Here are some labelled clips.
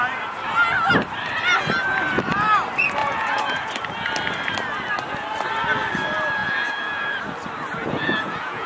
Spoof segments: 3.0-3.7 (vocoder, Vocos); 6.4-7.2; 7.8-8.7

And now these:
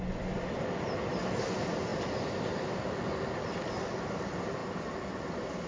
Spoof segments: none

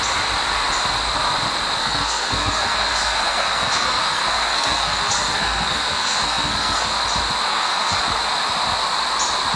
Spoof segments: 1.8-7.0 (codec, SNAC); 7.5-8.0

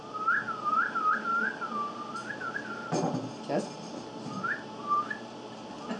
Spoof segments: none

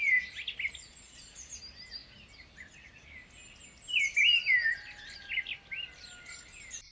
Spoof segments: 0.8-1.6 (vocoder, Vocos)

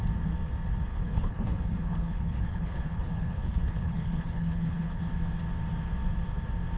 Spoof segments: 0.9-5.0 (codec, HILCodec)

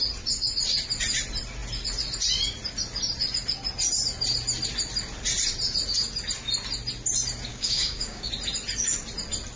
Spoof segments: 7.5-8.3 (codec, DAC)

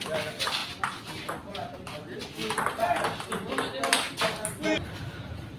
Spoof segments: none